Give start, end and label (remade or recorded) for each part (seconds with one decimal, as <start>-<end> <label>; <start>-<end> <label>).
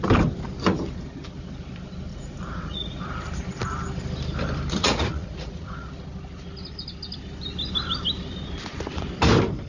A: 0.0-2.1 recorded; 2.1-3.0 remade; 3.0-4.8 recorded; 4.8-5.9 remade; 5.9-9.7 recorded